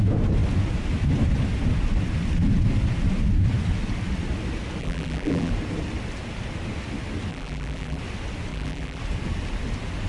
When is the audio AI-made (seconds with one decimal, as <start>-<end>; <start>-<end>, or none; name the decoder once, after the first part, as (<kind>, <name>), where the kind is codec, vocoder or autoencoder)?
4.8-5.5 (vocoder, BigVGAN v2); 7.3-8.0; 8.5-9.0